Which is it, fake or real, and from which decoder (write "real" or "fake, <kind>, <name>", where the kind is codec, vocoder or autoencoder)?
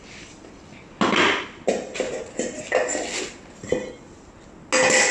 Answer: real